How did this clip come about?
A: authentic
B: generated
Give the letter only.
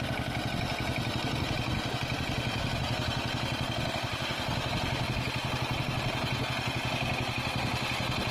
A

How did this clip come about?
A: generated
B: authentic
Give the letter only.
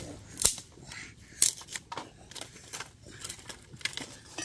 B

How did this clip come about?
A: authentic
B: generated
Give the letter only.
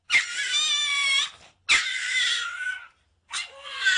A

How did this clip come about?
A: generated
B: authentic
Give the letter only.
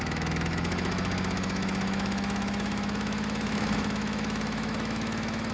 A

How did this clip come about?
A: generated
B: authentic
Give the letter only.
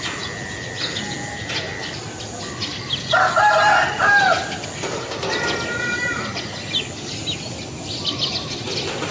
B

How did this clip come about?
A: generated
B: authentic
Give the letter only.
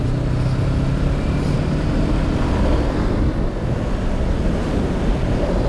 B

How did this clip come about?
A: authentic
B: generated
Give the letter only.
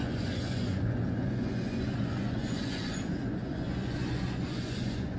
B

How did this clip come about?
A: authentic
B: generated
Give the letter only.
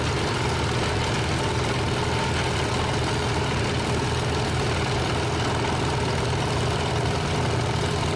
A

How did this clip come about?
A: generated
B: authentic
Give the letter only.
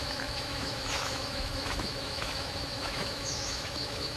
A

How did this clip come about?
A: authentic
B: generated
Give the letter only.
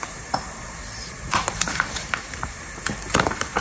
B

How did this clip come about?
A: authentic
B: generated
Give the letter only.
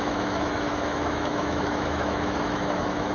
B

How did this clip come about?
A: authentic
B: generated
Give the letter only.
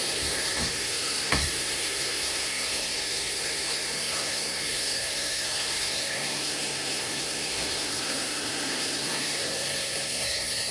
B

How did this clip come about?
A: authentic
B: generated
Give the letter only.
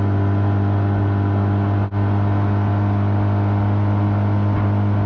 A